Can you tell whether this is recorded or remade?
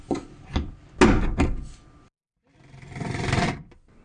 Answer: recorded